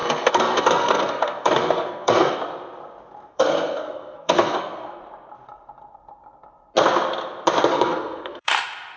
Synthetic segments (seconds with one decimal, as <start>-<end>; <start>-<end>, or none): 0.0-2.4; 3.3-5.0; 7.7-8.5